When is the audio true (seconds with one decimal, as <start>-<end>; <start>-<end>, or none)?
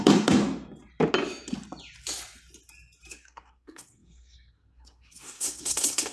0.4-3.1